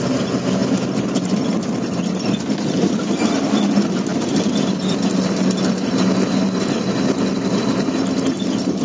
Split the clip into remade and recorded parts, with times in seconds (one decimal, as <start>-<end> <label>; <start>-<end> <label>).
0.0-8.8 recorded